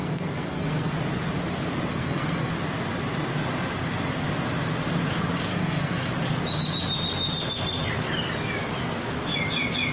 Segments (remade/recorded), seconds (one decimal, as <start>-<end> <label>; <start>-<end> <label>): 0.0-0.9 remade; 0.9-1.9 recorded; 1.9-2.5 remade; 2.5-5.5 recorded; 5.5-6.1 remade; 6.1-9.9 recorded